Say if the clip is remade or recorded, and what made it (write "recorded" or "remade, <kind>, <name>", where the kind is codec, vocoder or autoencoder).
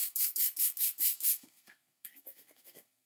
remade, codec, SNAC